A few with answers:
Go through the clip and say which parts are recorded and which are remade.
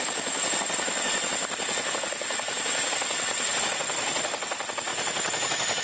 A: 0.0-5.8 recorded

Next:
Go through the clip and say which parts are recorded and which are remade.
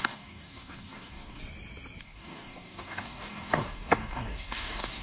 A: 0.0-1.4 remade; 1.4-2.0 recorded; 2.0-5.0 remade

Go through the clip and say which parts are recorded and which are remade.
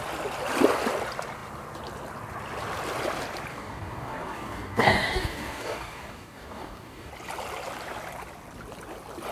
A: 0.0-3.5 recorded; 3.5-7.1 remade; 7.1-9.3 recorded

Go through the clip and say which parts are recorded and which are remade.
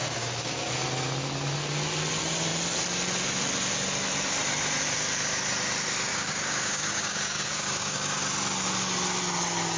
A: 0.0-0.7 remade; 0.7-6.1 recorded; 6.1-8.2 remade; 8.2-9.8 recorded